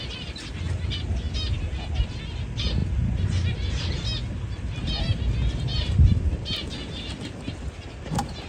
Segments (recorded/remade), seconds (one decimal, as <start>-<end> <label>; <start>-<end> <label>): 0.0-5.7 recorded; 5.7-6.3 remade; 6.3-8.5 recorded